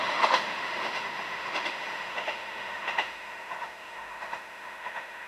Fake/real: fake